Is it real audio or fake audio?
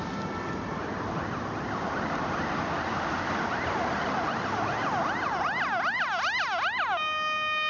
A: real